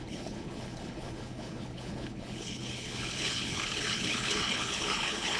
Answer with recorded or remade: remade